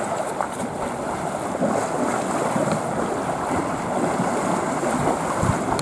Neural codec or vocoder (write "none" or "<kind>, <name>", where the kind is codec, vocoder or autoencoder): none